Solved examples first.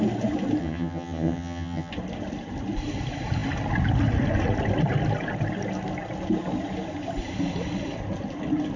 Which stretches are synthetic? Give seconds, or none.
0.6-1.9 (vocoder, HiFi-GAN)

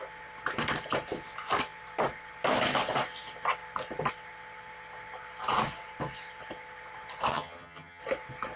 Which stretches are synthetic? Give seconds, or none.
7.3-8.0 (vocoder, HiFi-GAN)

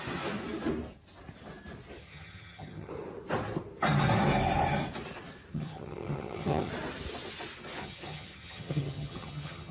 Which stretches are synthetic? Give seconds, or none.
2.0-2.9 (vocoder, HiFi-GAN); 5.5-6.7; 7.8-9.7